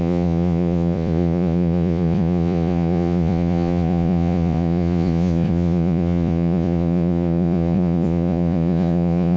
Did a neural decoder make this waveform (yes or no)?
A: yes